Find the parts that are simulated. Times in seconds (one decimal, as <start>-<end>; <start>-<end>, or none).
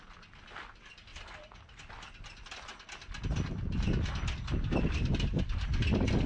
none